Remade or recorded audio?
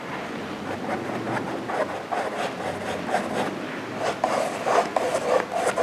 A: recorded